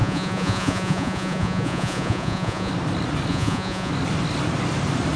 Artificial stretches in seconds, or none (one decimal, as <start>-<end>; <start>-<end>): 0.0-2.7; 3.3-3.9